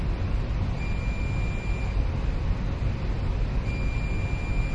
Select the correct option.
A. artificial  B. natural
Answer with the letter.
B